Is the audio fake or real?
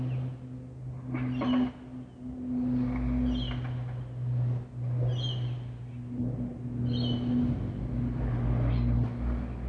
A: real